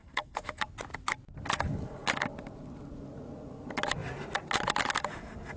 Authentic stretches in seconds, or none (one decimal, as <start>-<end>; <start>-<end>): 0.6-5.6